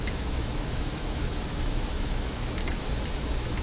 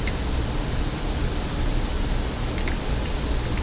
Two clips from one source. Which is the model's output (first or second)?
first